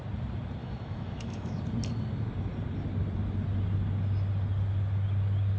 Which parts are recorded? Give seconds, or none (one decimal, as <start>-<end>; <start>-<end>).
0.0-0.6; 1.6-5.6